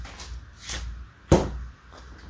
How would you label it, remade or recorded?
recorded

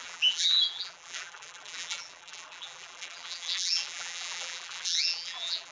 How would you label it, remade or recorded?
remade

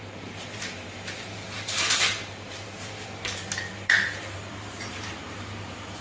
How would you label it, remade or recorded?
remade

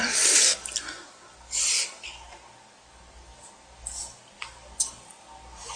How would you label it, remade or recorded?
remade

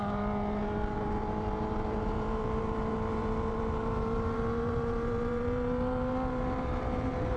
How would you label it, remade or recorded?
remade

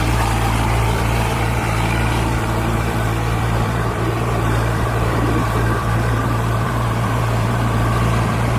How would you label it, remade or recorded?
remade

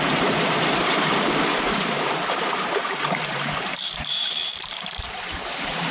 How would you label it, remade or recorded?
remade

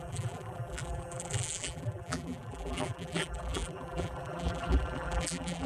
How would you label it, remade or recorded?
remade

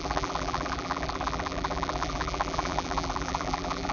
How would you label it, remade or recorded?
remade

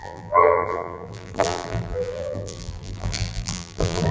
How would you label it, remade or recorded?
remade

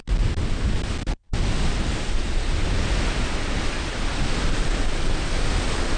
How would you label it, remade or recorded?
recorded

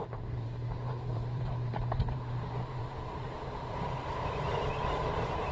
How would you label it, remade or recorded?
remade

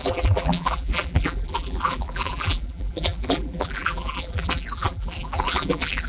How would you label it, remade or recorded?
remade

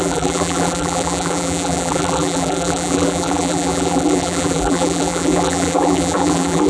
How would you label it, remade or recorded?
remade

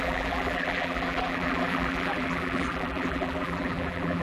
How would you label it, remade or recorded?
remade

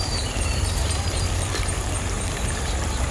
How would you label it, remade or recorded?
remade